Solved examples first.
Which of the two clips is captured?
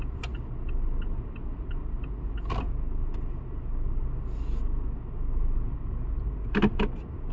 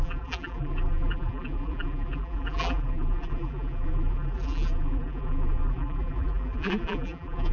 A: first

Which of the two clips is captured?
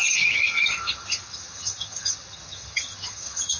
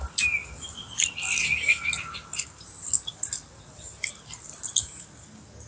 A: second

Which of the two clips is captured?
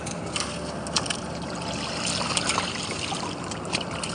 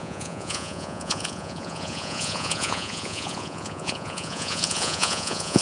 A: first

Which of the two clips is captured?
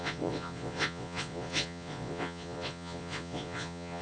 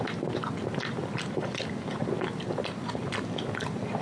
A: second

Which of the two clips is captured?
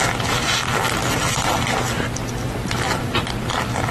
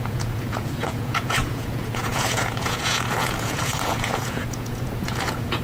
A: first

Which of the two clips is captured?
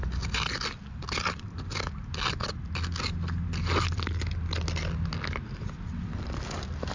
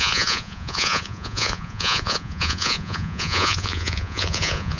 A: first